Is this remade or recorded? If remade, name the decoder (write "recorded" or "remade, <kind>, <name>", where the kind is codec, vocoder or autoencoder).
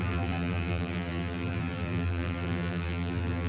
remade, vocoder, BigVGAN v2